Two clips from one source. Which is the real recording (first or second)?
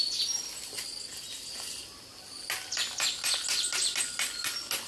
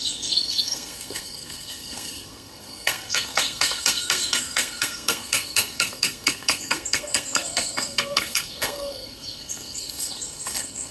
first